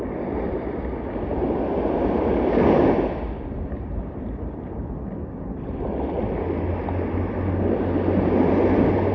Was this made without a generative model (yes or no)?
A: yes